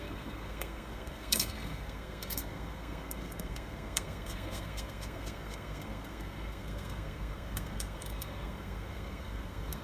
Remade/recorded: remade